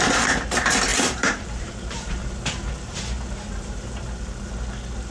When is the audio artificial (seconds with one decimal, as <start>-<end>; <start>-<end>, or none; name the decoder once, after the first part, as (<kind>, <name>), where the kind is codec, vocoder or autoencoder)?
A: 0.9-4.0 (vocoder, BigVGAN v2)